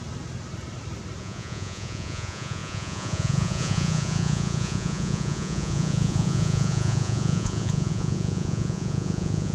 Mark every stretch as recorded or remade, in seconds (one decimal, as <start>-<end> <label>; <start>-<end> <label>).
0.0-1.2 recorded; 1.2-9.5 remade